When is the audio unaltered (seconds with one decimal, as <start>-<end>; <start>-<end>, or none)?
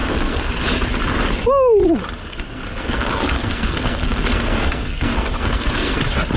0.5-2.2; 6.0-6.4